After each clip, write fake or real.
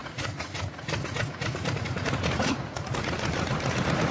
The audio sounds fake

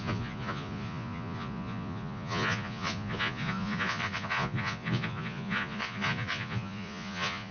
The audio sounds fake